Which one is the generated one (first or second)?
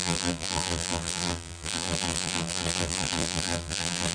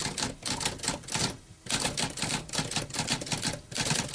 first